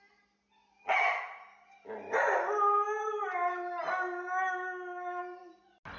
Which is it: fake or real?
real